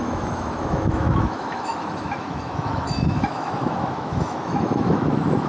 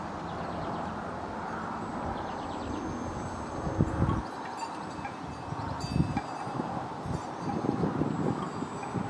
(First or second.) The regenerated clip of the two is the first